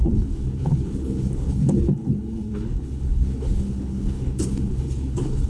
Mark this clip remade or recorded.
remade